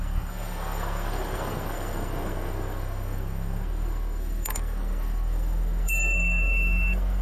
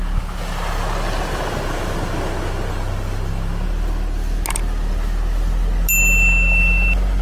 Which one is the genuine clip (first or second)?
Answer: second